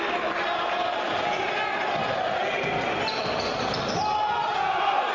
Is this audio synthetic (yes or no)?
no